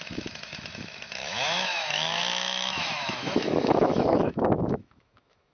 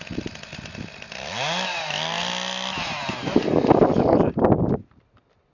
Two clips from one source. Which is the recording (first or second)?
second